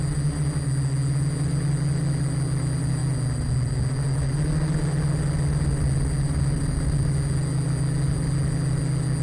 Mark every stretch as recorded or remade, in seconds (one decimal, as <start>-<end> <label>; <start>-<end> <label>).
0.0-9.2 recorded